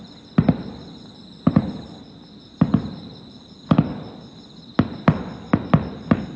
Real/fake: real